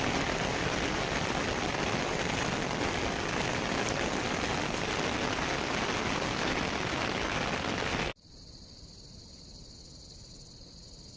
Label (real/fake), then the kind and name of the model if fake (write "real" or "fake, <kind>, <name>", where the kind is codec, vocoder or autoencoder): real